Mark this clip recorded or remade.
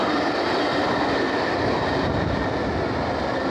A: recorded